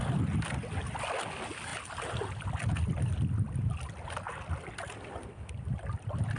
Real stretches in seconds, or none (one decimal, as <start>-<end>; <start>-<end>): 0.0-6.4